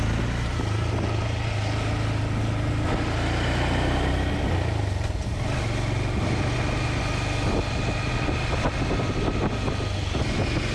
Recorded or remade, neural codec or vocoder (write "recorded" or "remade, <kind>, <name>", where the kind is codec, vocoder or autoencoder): recorded